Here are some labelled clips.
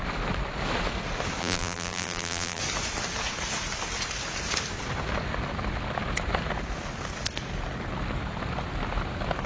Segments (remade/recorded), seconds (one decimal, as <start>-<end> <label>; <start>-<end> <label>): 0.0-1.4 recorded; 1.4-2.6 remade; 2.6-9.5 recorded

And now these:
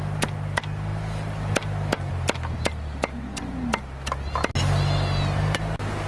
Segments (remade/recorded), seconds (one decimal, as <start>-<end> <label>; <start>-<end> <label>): 0.0-6.1 recorded

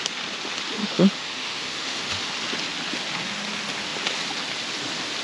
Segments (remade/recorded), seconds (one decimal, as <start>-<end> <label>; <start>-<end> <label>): 0.0-0.8 recorded; 0.8-2.2 remade; 2.2-5.2 recorded

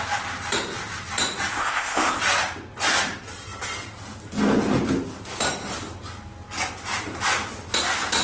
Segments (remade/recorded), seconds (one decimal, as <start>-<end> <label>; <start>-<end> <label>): 0.0-1.5 recorded; 1.5-2.2 remade; 2.2-8.2 recorded

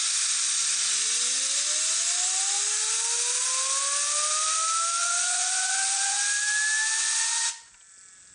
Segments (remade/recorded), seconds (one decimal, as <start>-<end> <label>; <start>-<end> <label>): 0.0-5.0 recorded; 5.0-6.2 remade; 6.2-7.0 recorded; 7.0-7.7 remade; 7.7-8.3 recorded

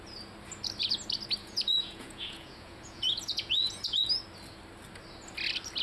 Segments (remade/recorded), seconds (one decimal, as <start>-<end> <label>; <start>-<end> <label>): 0.0-1.4 recorded; 1.4-4.1 remade; 4.1-5.8 recorded